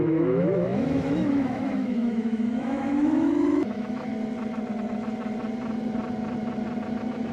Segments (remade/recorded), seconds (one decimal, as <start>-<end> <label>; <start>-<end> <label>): 0.0-4.1 remade; 4.1-7.3 recorded